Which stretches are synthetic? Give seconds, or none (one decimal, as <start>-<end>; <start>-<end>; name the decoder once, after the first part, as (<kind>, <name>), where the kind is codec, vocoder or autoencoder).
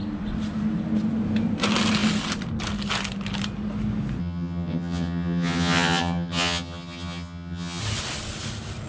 4.2-7.8 (vocoder, HiFi-GAN)